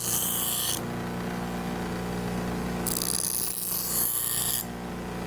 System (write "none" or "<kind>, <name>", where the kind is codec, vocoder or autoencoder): none